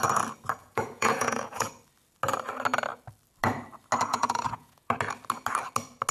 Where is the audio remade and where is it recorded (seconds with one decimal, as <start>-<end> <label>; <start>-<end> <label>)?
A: 0.0-0.6 recorded; 0.6-1.7 remade; 1.7-4.1 recorded; 4.1-4.9 remade; 4.9-6.1 recorded